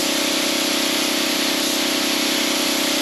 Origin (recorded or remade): recorded